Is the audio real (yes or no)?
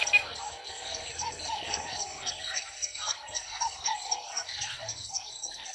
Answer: no